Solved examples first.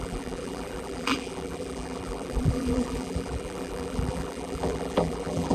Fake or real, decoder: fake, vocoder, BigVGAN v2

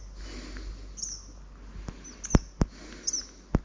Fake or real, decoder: real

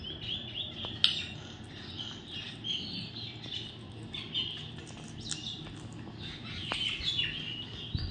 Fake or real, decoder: real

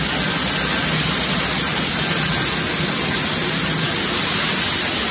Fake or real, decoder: real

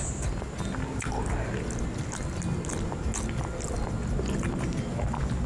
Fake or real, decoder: real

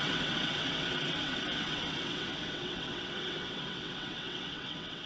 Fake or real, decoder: fake, vocoder, WaveNeXt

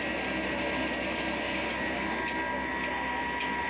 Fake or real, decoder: real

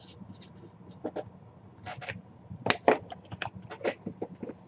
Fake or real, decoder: real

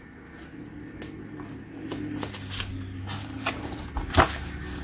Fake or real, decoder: real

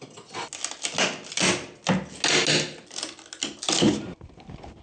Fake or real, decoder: real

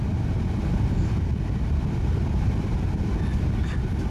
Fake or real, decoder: real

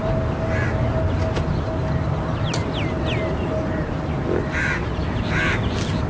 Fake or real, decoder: real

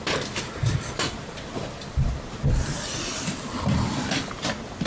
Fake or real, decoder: real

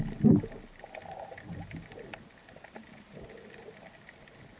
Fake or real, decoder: real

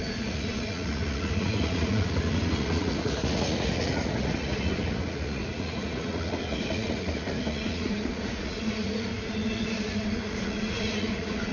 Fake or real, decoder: fake, vocoder, Vocos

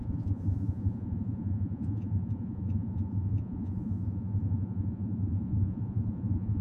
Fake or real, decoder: fake, vocoder, Vocos